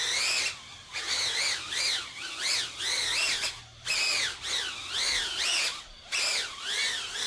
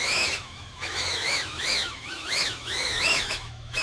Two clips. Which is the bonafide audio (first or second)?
first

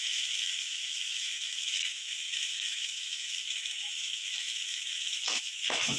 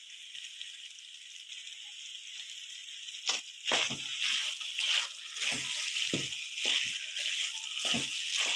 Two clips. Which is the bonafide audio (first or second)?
second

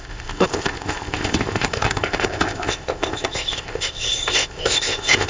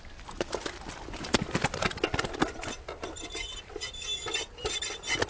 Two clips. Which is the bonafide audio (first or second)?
second